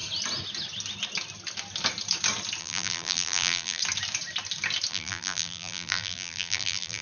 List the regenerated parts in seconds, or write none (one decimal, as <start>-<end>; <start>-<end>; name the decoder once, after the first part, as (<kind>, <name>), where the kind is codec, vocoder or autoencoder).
2.6-3.8 (vocoder, BigVGAN v2); 4.9-7.0